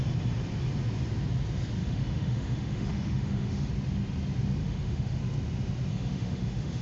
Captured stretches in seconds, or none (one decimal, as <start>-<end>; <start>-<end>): 0.0-1.8; 3.7-4.6; 5.2-5.9